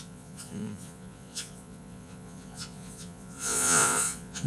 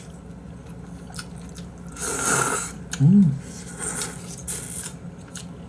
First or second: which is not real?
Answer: first